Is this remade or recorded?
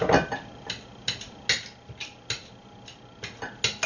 recorded